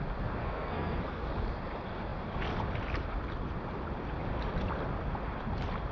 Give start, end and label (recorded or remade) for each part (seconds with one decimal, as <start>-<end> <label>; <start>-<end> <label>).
0.0-0.4 recorded; 0.4-1.3 remade; 1.3-5.9 recorded